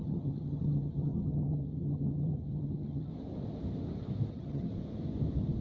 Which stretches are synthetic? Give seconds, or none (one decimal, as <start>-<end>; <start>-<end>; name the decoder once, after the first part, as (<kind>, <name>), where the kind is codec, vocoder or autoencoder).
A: 0.0-3.1 (vocoder, HiFi-GAN); 4.3-4.7